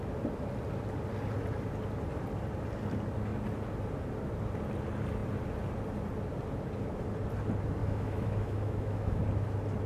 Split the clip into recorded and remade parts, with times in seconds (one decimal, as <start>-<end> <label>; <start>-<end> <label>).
0.0-7.8 recorded; 7.8-9.2 remade; 9.2-9.9 recorded